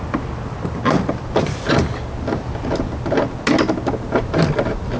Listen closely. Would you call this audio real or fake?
real